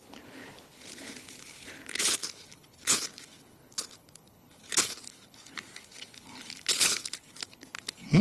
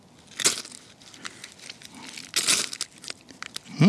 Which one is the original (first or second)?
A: second